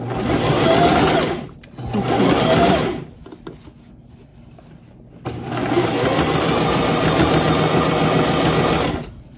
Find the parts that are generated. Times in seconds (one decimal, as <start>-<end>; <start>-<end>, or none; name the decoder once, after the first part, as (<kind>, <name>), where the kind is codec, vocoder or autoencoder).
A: none